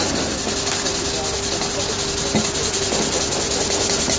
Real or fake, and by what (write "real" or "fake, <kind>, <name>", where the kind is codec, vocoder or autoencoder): real